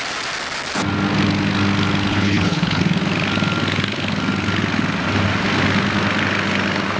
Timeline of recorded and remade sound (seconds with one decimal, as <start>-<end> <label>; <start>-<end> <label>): 0.0-2.1 recorded; 2.1-2.8 remade; 2.8-7.0 recorded

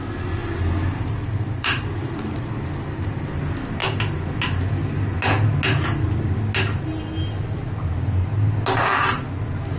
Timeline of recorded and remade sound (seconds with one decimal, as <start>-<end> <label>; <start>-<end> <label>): 0.0-0.4 recorded; 0.4-3.3 remade; 3.3-9.8 recorded

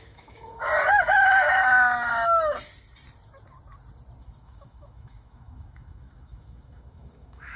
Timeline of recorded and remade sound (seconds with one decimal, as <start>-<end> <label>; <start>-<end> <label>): 0.0-0.7 remade; 0.7-4.2 recorded; 4.2-7.6 remade

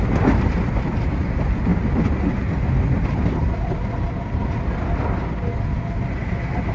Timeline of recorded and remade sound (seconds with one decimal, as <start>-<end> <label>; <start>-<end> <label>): 0.0-6.7 recorded

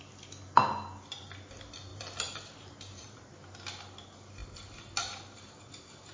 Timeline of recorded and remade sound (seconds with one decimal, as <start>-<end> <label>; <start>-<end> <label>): 0.0-1.9 recorded; 1.9-3.4 remade; 3.4-6.1 recorded